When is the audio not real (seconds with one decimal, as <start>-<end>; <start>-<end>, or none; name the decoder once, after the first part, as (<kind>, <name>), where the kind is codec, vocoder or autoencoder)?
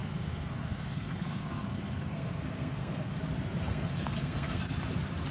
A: 0.0-3.2 (codec, SNAC); 3.7-4.6